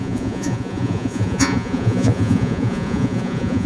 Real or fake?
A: fake